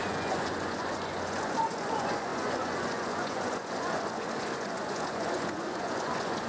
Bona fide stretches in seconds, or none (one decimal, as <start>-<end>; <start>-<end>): none